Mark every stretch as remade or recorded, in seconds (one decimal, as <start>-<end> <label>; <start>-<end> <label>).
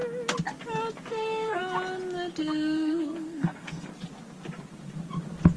0.0-1.1 recorded; 1.1-1.6 remade; 1.6-2.4 recorded; 2.4-3.9 remade; 3.9-5.6 recorded